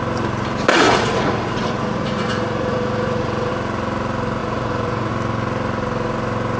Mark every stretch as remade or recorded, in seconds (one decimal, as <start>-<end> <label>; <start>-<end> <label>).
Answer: 0.0-0.7 recorded; 0.7-3.5 remade; 3.5-4.4 recorded; 4.4-5.1 remade; 5.1-6.6 recorded